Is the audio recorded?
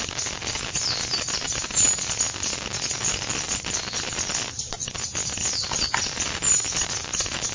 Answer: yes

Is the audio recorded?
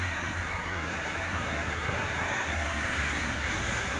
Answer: no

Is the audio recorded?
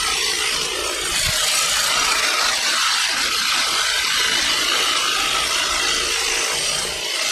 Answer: yes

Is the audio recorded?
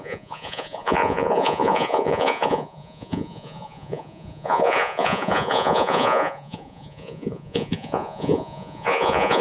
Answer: no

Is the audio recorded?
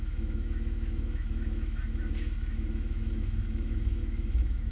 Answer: no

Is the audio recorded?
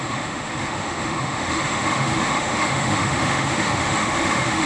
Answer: no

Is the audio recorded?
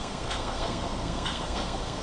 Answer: no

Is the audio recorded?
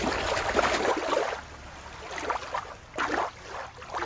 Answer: yes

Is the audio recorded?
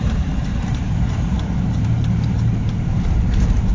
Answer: no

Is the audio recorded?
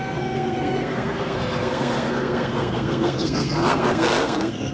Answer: no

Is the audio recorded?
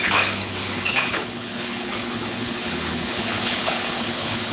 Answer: no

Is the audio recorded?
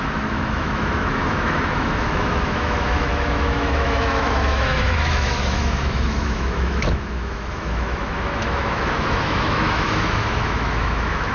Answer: no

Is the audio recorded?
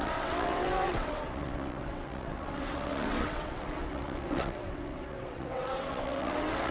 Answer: no